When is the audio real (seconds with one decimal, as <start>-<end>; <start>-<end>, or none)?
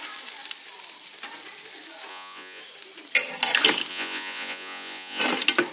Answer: 0.0-2.1; 2.6-3.9; 5.2-5.7